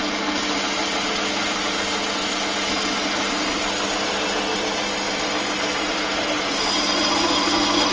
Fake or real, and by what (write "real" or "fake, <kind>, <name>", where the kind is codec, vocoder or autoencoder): real